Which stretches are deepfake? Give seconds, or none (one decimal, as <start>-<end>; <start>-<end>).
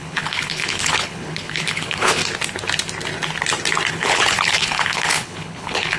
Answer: 0.0-2.2; 3.9-6.0